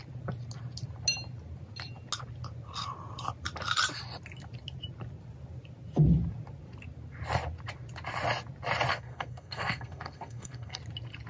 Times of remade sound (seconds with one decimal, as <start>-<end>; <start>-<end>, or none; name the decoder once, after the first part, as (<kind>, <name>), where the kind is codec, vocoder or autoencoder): 8.9-10.8 (codec, SNAC)